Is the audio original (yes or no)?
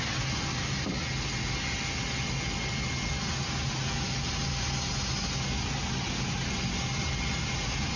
yes